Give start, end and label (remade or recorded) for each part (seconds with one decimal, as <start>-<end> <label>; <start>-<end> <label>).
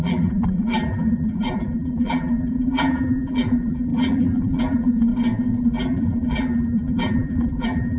0.0-5.1 remade; 5.1-5.6 recorded; 5.6-8.0 remade